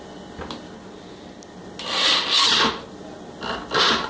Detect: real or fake real